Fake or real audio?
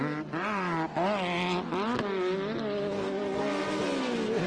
real